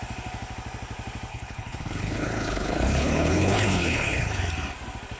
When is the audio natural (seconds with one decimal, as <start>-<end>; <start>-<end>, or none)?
0.0-1.3; 4.4-5.2